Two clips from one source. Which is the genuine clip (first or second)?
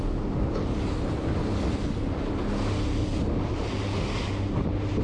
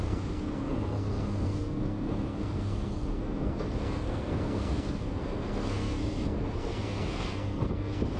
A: first